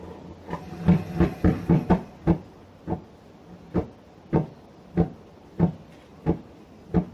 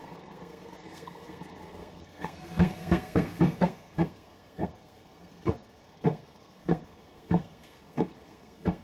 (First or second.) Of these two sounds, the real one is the first